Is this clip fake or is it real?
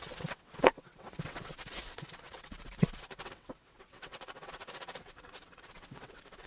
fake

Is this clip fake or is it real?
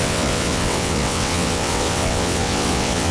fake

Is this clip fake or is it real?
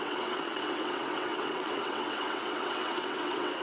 fake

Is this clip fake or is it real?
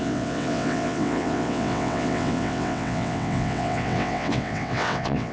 fake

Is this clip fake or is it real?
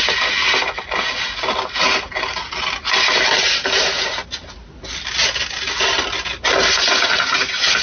real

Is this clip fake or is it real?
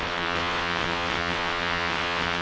fake